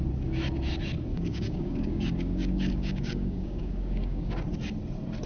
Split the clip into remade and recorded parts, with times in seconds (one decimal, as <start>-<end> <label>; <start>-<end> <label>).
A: 0.0-1.1 recorded; 1.1-4.3 remade; 4.3-5.3 recorded